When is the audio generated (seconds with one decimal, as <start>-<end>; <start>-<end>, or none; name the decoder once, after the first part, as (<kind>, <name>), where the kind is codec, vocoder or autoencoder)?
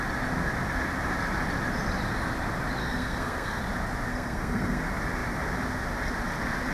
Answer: 2.8-3.6 (codec, SNAC); 4.1-4.8